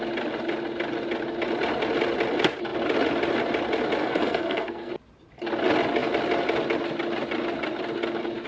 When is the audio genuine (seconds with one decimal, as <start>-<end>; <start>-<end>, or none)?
0.0-4.0; 4.9-8.5